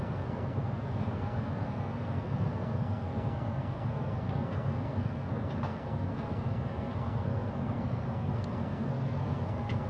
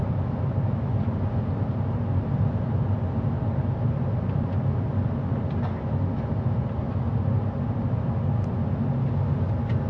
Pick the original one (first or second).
second